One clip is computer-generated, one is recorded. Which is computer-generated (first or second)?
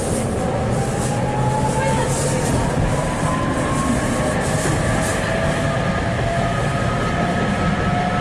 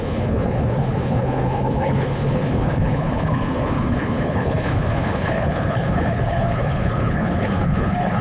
second